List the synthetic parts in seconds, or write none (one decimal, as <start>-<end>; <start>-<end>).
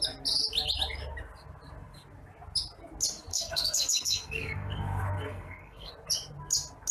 3.3-5.9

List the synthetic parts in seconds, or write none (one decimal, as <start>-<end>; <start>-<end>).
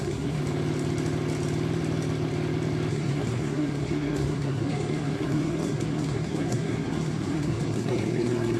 0.0-0.4; 2.9-8.6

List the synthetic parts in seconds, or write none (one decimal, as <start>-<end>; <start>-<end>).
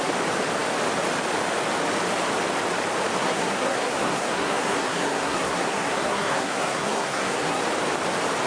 3.2-7.6